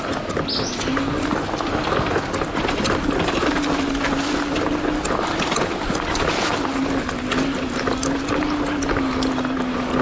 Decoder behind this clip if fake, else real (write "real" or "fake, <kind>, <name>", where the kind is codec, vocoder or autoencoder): real